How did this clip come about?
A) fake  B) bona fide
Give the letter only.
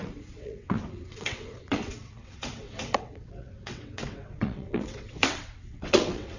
A